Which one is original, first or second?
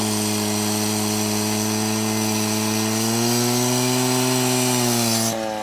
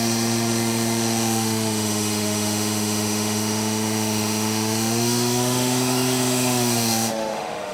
first